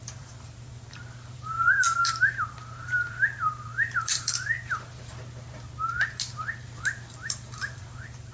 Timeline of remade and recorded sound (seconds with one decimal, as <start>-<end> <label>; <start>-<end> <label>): 0.0-5.1 remade; 5.1-7.1 recorded; 7.1-8.3 remade